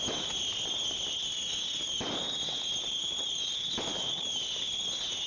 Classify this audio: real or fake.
real